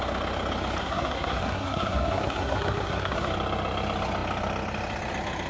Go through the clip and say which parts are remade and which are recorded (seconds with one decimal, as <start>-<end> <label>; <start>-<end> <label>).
0.0-0.8 recorded; 0.8-3.3 remade; 3.3-5.5 recorded